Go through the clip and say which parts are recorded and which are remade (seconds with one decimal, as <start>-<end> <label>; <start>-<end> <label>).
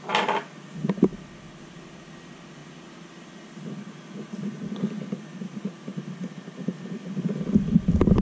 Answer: 0.0-8.2 recorded